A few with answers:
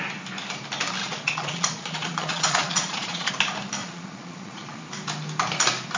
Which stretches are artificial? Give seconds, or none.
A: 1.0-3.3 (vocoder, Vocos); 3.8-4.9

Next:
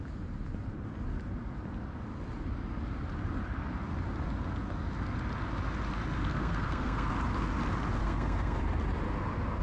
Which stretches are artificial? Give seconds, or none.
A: 6.3-7.1 (codec, SNAC); 8.0-8.6

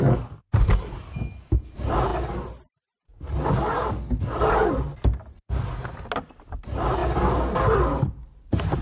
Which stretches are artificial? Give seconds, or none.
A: none